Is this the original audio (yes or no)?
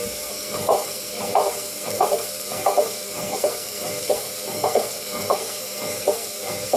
no